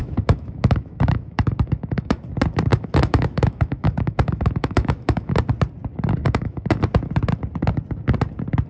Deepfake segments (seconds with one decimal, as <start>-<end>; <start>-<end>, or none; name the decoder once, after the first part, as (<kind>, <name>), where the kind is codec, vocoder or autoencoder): 0.0-2.2 (autoencoder, DAC-VAE); 2.7-5.4; 6.2-6.8